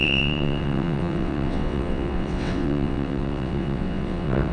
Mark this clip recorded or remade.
remade